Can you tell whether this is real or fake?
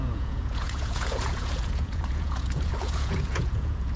fake